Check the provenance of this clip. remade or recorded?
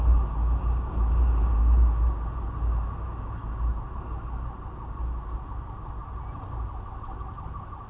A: recorded